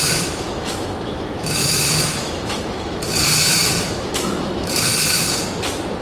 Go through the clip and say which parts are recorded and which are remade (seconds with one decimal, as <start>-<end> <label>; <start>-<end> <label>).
0.0-4.9 remade; 4.9-6.0 recorded